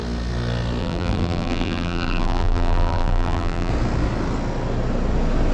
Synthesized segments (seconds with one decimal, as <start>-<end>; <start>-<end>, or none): 0.8-3.7